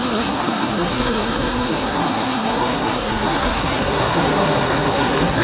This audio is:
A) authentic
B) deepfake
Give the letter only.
B